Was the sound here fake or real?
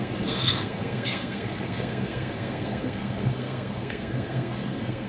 fake